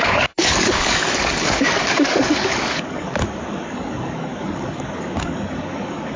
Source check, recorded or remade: remade